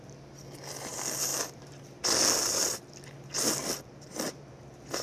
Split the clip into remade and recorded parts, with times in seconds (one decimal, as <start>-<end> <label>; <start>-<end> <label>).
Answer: 0.0-5.0 recorded